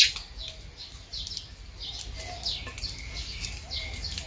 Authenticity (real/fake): real